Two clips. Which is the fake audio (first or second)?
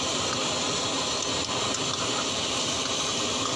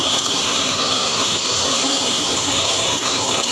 second